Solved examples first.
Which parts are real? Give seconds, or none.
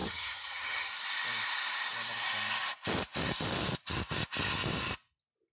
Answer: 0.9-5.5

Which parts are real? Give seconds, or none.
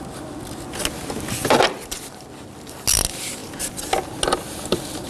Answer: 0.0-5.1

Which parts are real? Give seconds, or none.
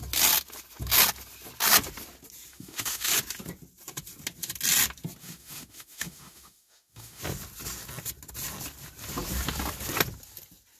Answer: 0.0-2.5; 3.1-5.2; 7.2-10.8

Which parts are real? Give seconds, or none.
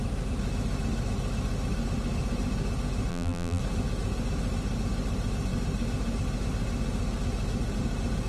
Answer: 0.0-3.1; 3.6-8.3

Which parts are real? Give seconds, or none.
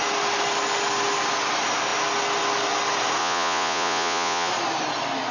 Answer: 0.0-3.2; 4.5-5.3